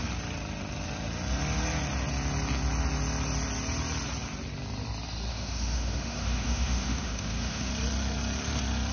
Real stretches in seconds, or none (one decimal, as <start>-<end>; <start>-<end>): 0.0-5.3; 7.7-8.9